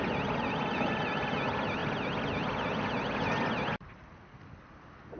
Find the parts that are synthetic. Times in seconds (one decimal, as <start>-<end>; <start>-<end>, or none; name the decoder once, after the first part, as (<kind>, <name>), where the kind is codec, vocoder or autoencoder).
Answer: none